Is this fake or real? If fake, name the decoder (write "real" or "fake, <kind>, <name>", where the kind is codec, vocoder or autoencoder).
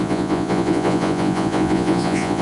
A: fake, vocoder, Vocos